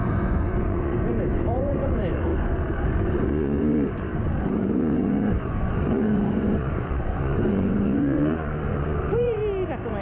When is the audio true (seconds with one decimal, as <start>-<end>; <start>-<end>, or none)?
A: 9.4-10.0